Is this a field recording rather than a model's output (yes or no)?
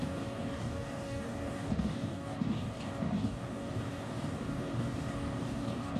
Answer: no